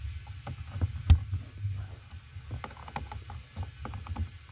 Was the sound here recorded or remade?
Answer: recorded